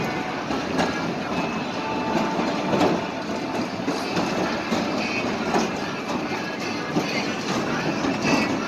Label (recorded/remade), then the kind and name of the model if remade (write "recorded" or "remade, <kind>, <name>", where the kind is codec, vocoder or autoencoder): recorded